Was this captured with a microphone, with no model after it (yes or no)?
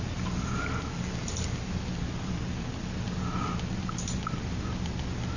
yes